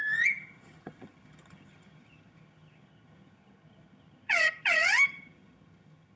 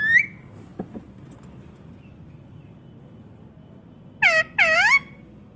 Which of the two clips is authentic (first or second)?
second